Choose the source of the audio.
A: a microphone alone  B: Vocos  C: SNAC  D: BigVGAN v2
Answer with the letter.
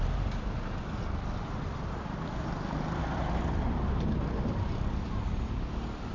A